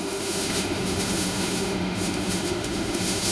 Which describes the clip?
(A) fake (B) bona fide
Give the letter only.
A